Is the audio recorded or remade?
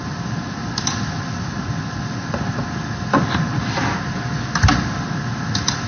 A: recorded